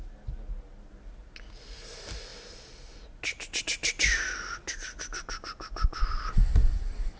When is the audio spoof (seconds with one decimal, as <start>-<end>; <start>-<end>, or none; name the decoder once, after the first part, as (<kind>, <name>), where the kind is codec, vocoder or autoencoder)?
none